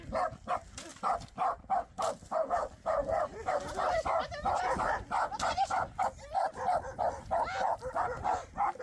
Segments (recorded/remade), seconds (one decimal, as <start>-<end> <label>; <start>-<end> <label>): 0.0-8.8 recorded